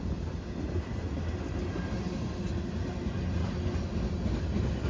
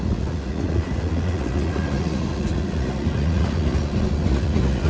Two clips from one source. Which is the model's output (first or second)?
second